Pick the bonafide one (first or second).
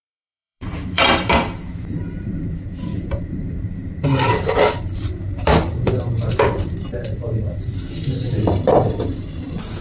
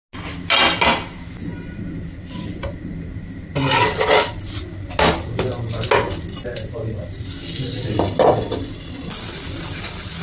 second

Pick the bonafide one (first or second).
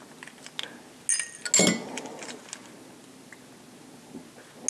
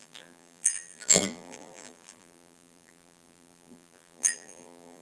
first